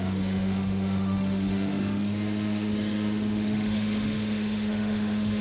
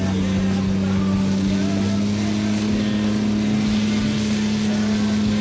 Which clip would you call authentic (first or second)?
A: second